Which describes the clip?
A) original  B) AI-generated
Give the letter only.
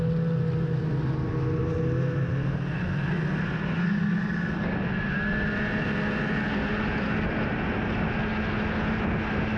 A